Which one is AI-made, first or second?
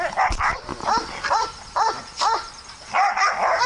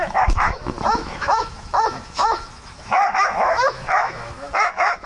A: second